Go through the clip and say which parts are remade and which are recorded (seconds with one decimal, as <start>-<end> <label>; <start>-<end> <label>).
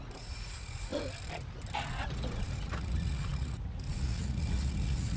0.0-0.9 remade; 0.9-1.9 recorded; 1.9-5.2 remade